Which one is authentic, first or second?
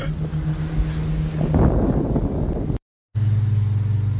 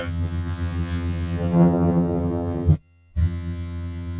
first